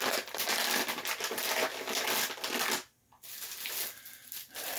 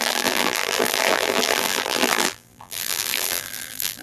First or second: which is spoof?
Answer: second